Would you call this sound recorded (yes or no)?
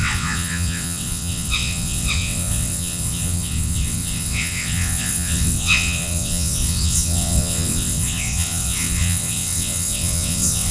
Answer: no